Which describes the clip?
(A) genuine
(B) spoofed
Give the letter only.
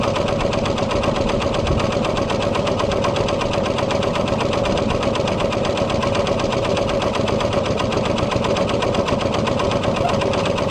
A